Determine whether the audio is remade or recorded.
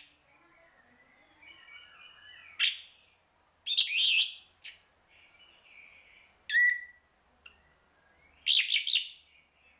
recorded